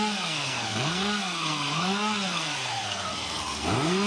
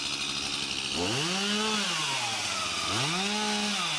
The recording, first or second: second